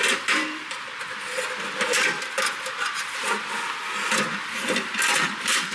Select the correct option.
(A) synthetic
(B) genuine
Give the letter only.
B